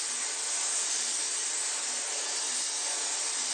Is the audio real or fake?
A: real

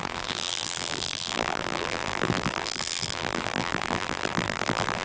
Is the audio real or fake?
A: fake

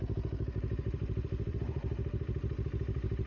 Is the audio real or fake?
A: fake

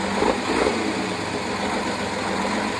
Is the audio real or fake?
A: real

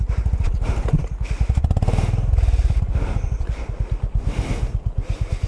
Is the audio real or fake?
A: real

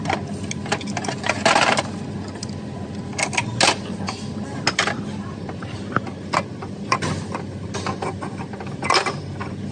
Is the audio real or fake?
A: real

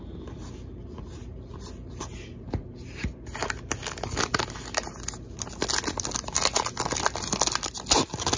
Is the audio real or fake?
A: real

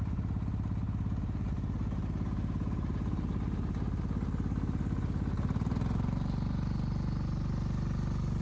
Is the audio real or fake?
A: real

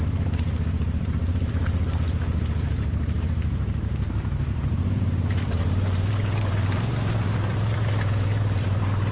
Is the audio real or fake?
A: fake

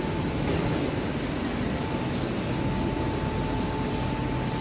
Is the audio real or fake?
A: real